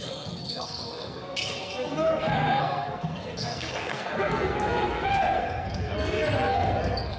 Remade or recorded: remade